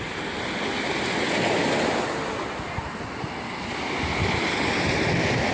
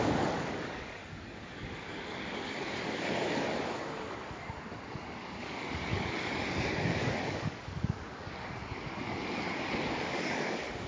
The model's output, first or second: second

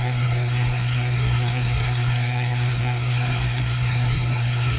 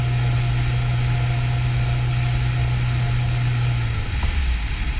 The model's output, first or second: first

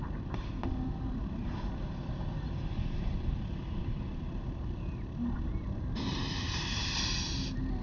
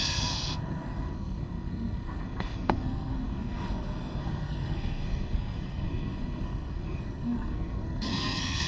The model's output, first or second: second